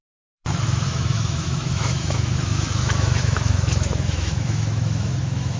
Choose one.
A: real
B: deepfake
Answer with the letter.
B